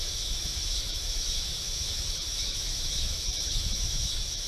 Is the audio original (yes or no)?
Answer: no